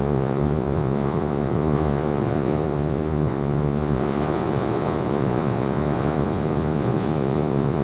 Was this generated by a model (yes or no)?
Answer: yes